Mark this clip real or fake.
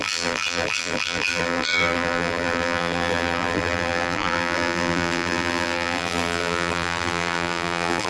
fake